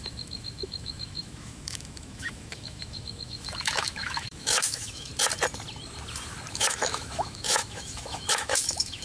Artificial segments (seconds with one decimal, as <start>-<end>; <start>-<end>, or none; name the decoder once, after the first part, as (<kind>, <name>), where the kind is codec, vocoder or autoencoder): 0.0-5.1 (autoencoder, DAC-VAE); 6.5-9.0